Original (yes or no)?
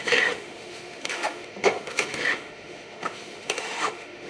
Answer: no